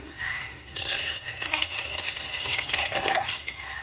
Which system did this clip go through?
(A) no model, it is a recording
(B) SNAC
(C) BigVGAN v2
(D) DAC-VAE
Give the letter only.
B